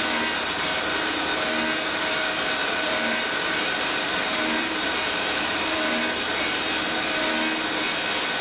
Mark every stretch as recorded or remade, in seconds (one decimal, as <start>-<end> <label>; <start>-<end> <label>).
0.0-2.6 recorded; 2.6-6.4 remade; 6.4-8.4 recorded